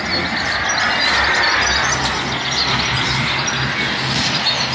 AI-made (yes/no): no